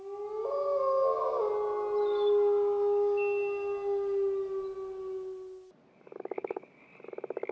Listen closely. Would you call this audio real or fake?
real